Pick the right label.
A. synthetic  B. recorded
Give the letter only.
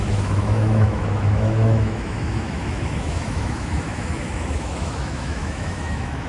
A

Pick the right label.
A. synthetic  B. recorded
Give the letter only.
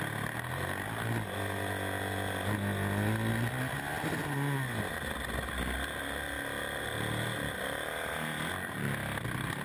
B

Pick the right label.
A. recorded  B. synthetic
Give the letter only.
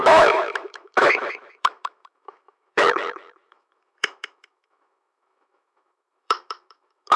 B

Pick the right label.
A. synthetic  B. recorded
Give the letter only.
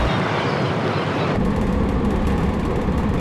B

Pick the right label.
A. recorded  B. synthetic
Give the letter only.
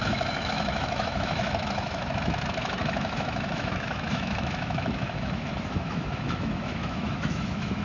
B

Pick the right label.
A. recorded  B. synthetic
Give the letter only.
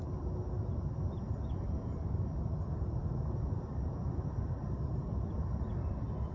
A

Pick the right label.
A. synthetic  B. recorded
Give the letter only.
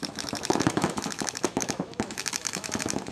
A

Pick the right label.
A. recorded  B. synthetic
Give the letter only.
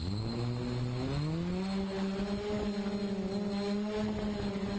A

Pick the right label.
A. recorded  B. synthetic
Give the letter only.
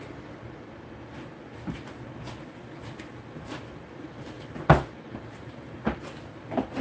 A